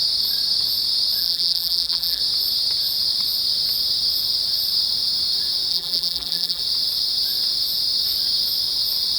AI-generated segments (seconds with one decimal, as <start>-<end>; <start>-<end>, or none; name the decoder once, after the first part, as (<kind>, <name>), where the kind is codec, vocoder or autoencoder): 1.2-2.2 (vocoder, BigVGAN v2); 5.7-6.6